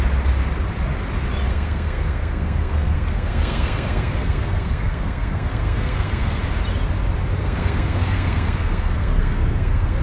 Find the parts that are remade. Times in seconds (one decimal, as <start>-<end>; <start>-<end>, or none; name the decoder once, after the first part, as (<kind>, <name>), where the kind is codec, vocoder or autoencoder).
1.5-6.4 (codec, SNAC); 7.4-10.0